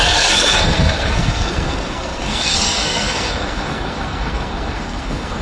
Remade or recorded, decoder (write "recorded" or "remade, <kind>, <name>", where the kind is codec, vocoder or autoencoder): remade, codec, SNAC